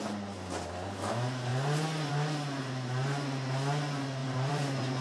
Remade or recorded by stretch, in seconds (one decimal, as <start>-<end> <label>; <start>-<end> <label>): 0.0-4.2 recorded; 4.2-5.0 remade